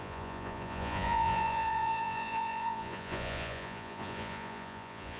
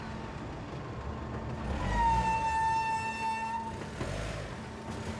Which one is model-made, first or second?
first